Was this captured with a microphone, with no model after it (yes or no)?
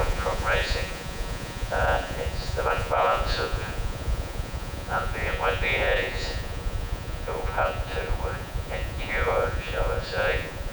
no